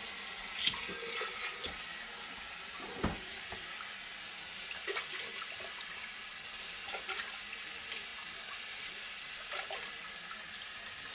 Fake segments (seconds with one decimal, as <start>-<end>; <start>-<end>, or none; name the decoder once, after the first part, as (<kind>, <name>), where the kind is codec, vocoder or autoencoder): none